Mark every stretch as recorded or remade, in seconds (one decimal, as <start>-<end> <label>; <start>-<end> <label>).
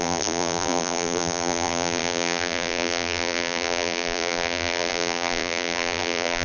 0.0-6.4 remade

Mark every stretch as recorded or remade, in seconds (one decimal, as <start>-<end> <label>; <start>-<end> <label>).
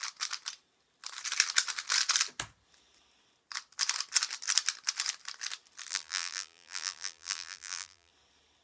0.0-5.9 recorded; 5.9-8.1 remade; 8.1-8.6 recorded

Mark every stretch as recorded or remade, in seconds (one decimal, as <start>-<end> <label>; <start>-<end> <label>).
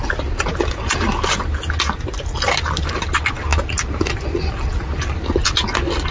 0.0-6.1 recorded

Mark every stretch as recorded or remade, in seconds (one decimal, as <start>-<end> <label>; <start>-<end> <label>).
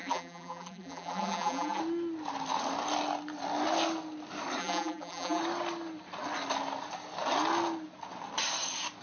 0.0-1.8 remade; 1.8-4.6 recorded; 4.6-5.4 remade; 5.4-9.0 recorded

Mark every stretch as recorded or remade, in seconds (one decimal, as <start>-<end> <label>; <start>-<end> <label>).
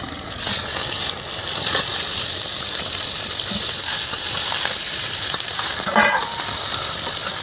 0.0-4.8 recorded; 4.8-6.1 remade; 6.1-7.4 recorded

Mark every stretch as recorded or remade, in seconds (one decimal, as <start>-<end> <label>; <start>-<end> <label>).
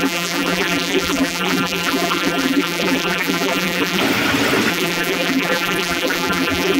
0.0-4.0 remade; 4.0-4.7 recorded; 4.7-6.8 remade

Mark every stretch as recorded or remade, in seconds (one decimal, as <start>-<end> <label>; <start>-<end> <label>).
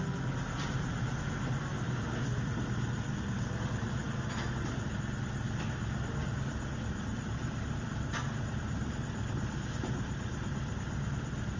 0.0-7.1 recorded; 7.1-8.8 remade; 8.8-11.6 recorded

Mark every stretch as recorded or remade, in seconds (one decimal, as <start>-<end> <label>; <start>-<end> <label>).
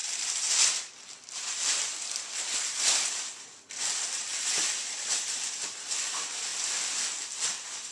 0.0-2.0 recorded; 2.0-4.3 remade; 4.3-5.6 recorded; 5.6-6.5 remade; 6.5-7.9 recorded